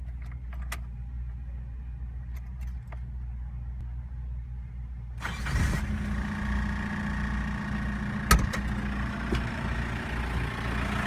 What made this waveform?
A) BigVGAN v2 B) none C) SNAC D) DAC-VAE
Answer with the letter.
B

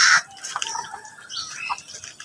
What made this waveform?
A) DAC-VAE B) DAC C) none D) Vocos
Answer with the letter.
C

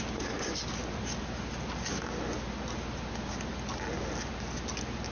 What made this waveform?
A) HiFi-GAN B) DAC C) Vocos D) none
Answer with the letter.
D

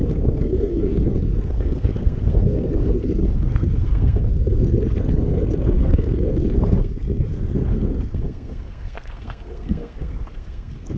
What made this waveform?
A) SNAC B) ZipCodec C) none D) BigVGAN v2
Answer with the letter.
A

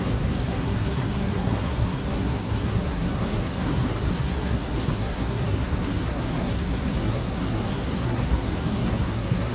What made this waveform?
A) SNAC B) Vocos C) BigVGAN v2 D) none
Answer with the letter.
A